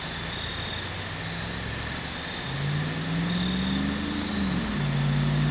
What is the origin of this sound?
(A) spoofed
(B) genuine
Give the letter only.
B